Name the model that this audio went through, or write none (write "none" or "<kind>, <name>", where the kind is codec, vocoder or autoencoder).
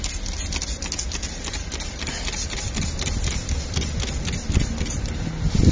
none